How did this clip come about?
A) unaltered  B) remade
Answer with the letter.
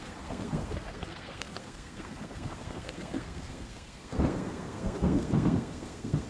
B